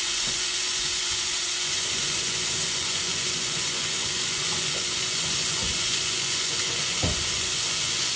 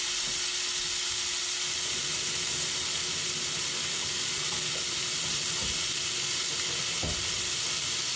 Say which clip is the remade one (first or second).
first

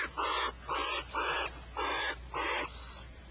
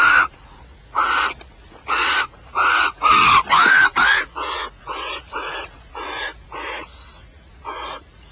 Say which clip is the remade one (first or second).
second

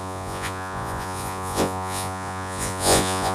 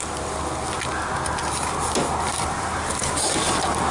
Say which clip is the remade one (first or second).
first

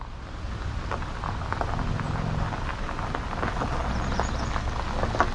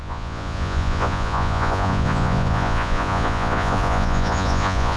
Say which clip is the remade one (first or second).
second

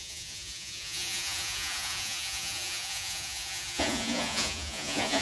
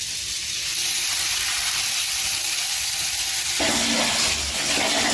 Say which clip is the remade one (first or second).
first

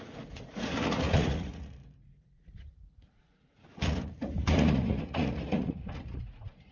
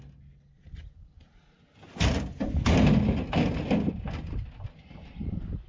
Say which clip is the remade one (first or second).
first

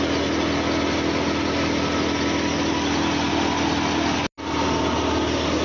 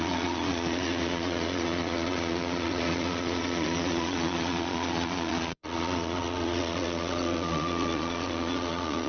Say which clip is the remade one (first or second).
second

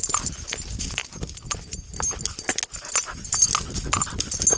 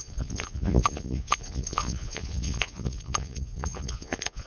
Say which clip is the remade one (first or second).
second